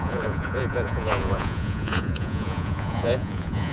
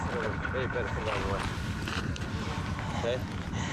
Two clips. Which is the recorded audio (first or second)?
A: second